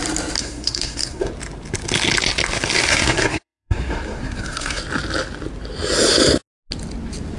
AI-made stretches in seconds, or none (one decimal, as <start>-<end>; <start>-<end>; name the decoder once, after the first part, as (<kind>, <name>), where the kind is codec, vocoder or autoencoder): 0.4-1.3 (codec, SNAC); 2.9-4.8